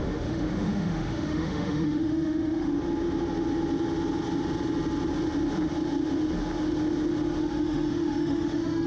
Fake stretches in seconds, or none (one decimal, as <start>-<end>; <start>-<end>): 0.0-2.7; 7.4-8.9